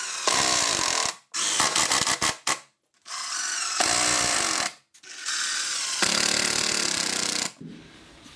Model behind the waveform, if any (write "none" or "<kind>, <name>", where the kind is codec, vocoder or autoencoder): none